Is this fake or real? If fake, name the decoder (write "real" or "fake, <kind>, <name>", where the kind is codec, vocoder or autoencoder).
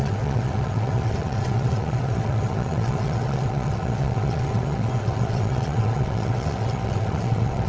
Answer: fake, vocoder, WaveNeXt